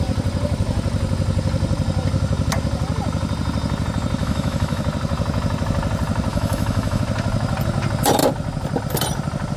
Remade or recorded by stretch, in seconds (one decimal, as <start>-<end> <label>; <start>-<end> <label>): 0.0-4.2 recorded; 4.2-4.8 remade; 4.8-6.3 recorded; 6.3-7.0 remade; 7.0-9.6 recorded